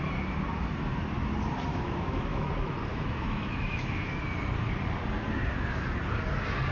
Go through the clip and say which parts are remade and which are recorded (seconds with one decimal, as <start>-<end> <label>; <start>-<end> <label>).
0.0-1.7 recorded; 1.7-2.5 remade; 2.5-2.9 recorded; 2.9-4.1 remade; 4.1-6.7 recorded